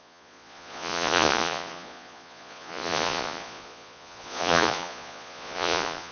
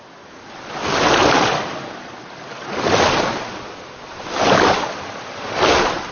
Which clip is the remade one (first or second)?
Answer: first